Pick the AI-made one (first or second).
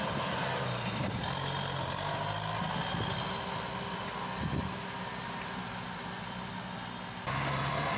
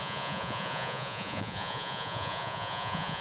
second